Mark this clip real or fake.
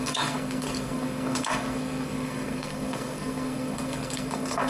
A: fake